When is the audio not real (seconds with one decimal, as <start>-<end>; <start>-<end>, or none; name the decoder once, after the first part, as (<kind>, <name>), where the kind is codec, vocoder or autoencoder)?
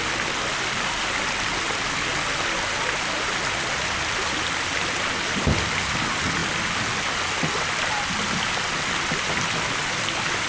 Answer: none